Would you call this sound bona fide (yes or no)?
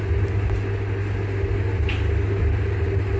yes